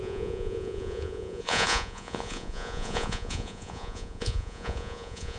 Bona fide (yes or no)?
no